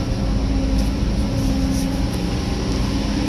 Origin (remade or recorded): recorded